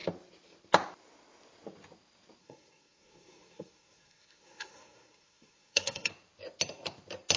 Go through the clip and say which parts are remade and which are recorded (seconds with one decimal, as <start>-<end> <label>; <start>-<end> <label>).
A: 0.0-2.4 recorded; 2.4-6.1 remade; 6.1-7.4 recorded